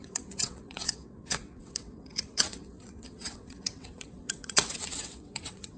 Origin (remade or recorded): remade